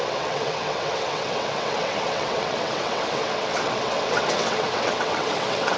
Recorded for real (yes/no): no